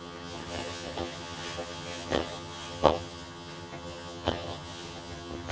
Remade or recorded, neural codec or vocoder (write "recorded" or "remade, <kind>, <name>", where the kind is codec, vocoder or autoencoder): remade, vocoder, HiFi-GAN